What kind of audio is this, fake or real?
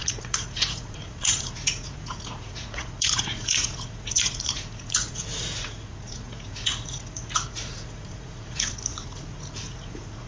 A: fake